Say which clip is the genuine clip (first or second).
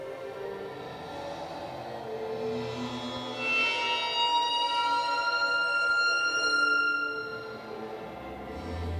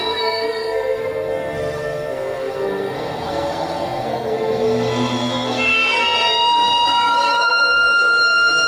first